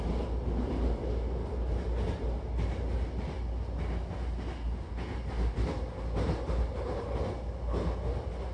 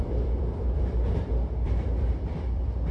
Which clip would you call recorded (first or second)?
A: first